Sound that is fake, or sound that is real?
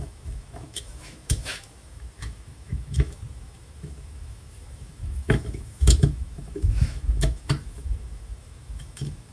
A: fake